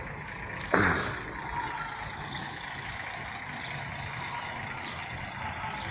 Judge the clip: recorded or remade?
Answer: recorded